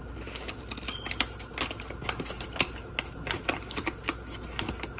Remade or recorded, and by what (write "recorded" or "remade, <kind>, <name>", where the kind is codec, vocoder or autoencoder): recorded